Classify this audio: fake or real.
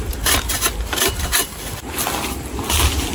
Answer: fake